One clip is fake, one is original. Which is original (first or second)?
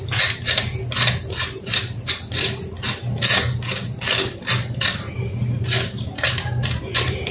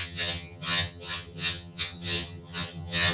first